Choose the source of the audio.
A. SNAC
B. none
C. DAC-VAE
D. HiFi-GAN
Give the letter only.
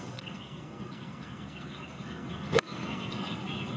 A